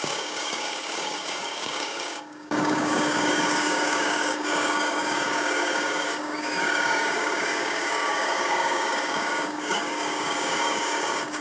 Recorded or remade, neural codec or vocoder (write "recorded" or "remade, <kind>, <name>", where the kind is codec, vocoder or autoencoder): remade, codec, DAC